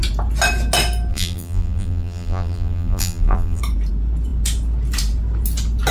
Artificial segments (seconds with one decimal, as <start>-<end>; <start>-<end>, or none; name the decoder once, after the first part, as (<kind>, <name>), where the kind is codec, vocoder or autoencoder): 1.1-3.6 (vocoder, BigVGAN v2)